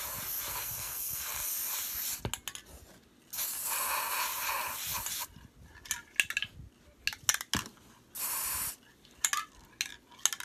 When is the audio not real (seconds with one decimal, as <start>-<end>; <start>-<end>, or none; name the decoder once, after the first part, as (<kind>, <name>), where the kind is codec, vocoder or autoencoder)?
0.5-1.5 (codec, SNAC)